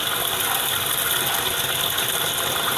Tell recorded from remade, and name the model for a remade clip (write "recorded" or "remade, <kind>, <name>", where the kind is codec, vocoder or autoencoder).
recorded